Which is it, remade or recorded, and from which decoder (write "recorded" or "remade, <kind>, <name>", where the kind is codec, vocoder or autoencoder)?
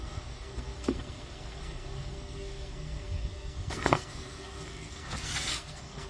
remade, codec, SNAC